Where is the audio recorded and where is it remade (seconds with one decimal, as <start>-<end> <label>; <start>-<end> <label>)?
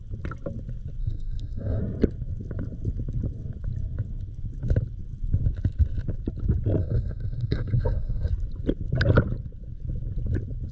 0.0-1.0 recorded; 1.0-1.8 remade; 1.8-6.8 recorded; 6.8-8.3 remade; 8.3-10.7 recorded